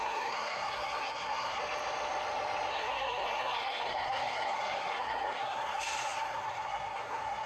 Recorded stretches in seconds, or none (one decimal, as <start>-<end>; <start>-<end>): 1.6-2.7